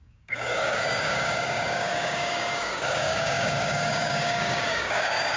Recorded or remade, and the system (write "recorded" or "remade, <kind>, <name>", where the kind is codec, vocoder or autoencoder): remade, codec, DAC